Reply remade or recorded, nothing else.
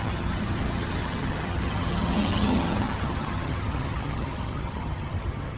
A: remade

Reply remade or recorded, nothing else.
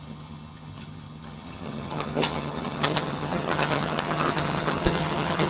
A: remade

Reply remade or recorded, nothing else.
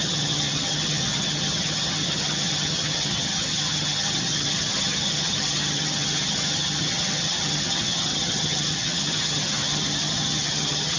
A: remade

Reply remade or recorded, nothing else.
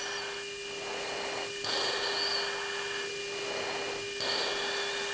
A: recorded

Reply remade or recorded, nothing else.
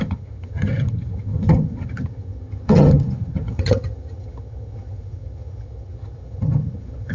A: remade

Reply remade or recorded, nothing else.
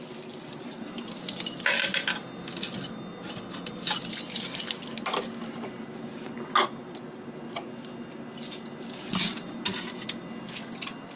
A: recorded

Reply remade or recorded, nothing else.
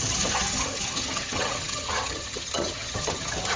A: remade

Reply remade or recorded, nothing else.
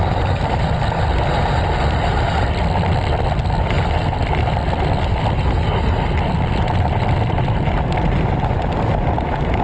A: recorded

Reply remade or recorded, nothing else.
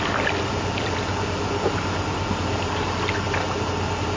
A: recorded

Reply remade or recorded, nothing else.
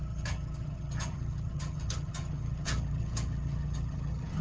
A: remade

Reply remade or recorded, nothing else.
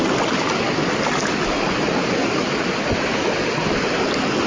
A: recorded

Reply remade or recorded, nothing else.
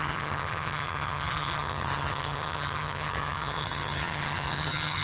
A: remade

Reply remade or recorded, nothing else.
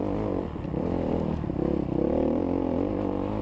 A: recorded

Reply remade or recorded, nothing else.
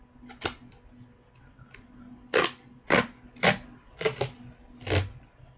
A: recorded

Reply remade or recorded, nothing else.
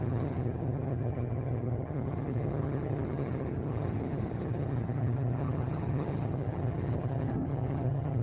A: remade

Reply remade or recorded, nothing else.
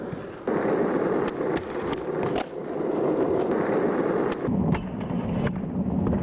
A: recorded